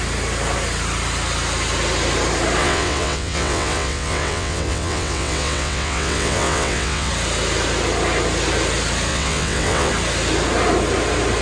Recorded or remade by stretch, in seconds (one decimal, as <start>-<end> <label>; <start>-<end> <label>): 0.0-2.6 recorded; 2.6-7.1 remade; 7.1-9.1 recorded; 9.1-9.9 remade; 9.9-11.4 recorded